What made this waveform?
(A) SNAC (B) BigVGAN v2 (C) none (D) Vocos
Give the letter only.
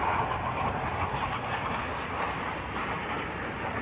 C